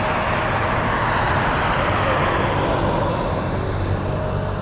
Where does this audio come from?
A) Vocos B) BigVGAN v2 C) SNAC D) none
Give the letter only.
D